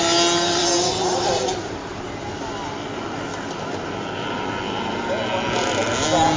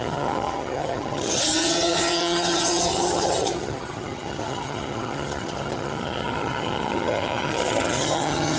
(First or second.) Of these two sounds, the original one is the first